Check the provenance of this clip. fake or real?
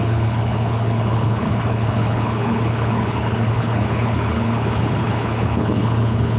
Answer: fake